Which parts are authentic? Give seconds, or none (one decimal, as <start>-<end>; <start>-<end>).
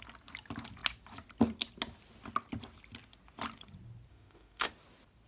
0.0-4.1; 4.7-5.3